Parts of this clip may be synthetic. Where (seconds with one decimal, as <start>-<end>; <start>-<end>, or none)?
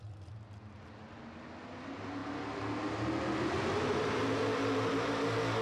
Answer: none